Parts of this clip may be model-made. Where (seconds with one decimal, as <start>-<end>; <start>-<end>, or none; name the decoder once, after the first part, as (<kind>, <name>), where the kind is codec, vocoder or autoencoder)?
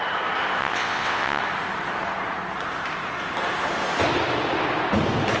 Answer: 0.6-1.4 (vocoder, WaveNeXt)